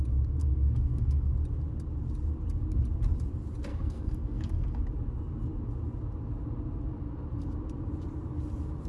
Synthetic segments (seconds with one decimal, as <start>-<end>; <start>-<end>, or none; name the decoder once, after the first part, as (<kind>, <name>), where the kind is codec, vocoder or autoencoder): 0.4-1.3 (codec, SNAC); 3.7-4.8